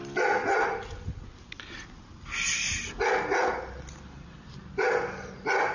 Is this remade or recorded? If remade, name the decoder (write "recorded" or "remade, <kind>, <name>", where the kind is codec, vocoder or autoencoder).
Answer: recorded